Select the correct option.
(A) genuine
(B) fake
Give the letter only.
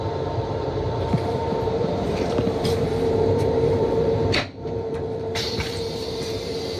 B